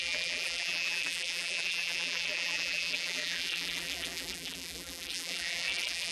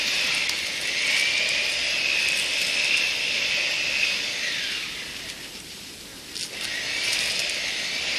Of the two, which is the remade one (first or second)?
first